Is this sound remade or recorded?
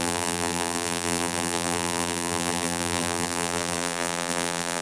remade